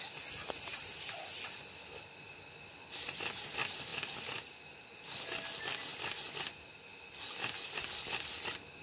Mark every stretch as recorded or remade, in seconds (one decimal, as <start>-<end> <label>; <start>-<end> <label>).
0.0-0.7 recorded; 0.7-1.3 remade; 1.3-3.9 recorded; 3.9-4.5 remade; 4.5-8.8 recorded